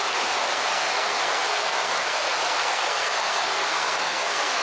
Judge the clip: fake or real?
fake